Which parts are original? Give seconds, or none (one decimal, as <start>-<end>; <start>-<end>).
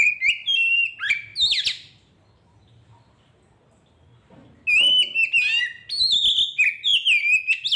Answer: 0.0-7.8